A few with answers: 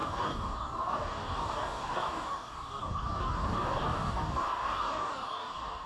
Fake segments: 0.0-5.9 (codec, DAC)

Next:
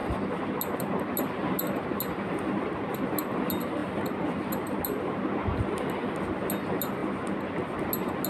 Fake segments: none

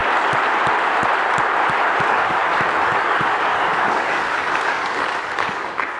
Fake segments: 2.1-6.0 (codec, DAC)